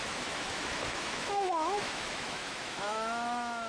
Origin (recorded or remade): remade